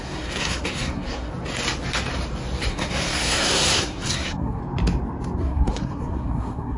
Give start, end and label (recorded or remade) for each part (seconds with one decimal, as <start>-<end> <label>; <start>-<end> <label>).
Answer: 0.0-1.3 remade; 1.3-2.7 recorded; 2.7-4.6 remade; 4.6-5.4 recorded; 5.4-6.8 remade